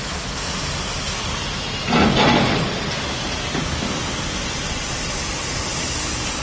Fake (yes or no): no